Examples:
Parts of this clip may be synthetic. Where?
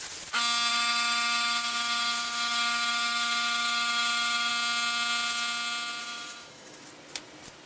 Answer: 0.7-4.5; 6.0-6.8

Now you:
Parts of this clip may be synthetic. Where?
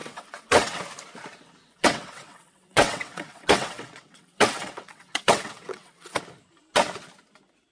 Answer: 0.0-0.8; 1.6-6.2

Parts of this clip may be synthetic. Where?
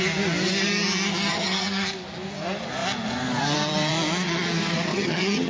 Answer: 1.3-1.9; 4.9-5.5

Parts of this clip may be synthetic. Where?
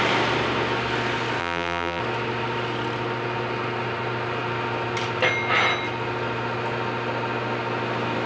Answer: 1.4-2.0